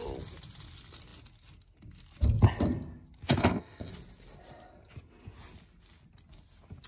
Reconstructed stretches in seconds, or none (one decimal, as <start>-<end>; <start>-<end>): 3.4-3.9